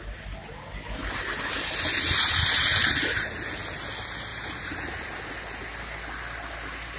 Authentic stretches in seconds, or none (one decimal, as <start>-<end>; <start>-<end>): 0.0-4.3; 5.3-7.0